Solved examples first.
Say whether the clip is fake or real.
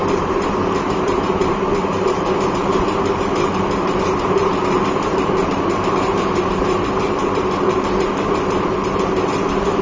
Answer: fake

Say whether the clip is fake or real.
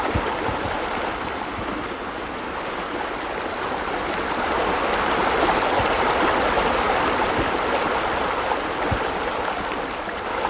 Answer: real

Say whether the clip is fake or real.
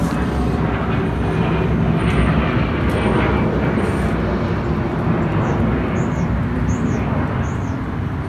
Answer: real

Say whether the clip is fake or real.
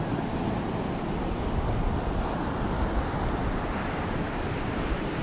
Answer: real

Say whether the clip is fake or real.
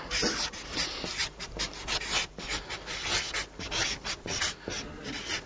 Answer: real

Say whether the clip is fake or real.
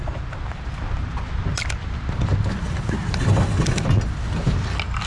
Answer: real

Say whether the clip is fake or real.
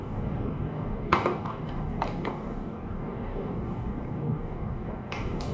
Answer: fake